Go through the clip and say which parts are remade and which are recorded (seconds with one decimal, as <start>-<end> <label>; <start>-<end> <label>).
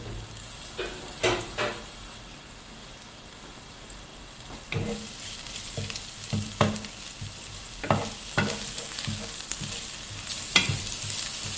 0.0-11.6 recorded